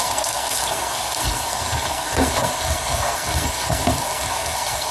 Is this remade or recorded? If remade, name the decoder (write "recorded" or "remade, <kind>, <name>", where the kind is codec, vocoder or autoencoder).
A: remade, codec, SNAC